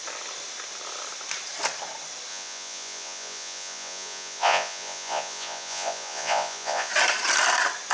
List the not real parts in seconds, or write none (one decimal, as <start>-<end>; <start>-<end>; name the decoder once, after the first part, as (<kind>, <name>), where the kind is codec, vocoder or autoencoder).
2.3-6.9 (vocoder, Vocos)